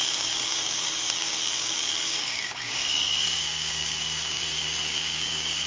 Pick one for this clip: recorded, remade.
remade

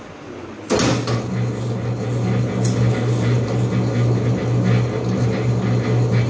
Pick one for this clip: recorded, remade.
recorded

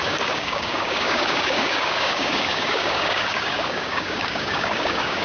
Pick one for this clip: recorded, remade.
remade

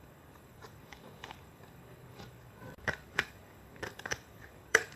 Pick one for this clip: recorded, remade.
remade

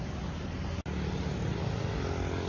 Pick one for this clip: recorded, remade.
recorded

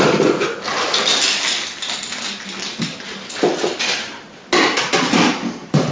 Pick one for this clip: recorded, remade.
recorded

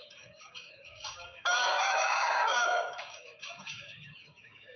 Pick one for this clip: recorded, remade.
remade